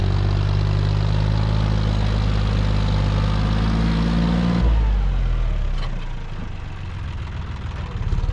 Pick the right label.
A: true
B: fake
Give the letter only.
A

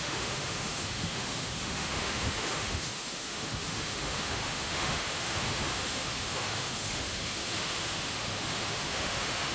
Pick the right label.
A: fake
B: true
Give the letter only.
A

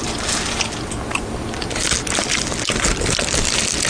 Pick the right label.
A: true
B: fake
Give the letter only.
A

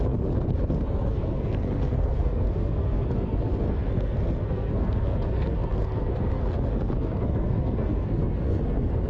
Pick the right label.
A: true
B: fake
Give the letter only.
B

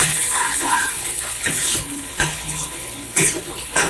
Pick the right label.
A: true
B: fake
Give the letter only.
B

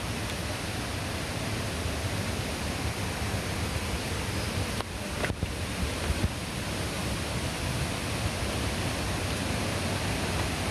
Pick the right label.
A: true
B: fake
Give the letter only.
A